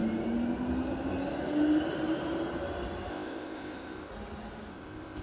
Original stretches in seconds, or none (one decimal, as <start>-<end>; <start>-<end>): 0.0-3.1; 4.1-4.7